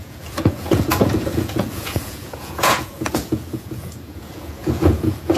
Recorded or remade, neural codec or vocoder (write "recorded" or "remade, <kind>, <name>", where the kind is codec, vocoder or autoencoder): remade, vocoder, Vocos